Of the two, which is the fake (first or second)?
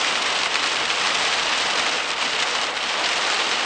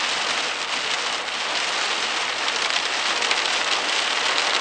first